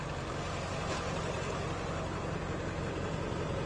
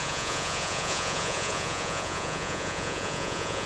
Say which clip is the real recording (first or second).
first